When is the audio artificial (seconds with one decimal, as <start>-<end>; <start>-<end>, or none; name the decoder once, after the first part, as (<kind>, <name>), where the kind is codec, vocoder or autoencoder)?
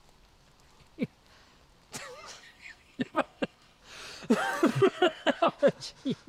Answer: 2.3-3.8 (codec, SNAC); 4.7-5.6